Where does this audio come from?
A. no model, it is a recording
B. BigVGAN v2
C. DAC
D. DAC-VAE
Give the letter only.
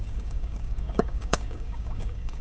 C